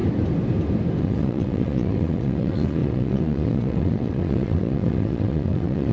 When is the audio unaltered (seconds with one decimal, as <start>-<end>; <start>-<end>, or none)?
0.0-1.0